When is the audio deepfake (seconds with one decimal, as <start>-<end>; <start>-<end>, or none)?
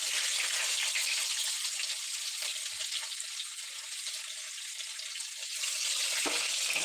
none